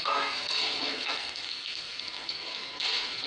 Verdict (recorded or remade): remade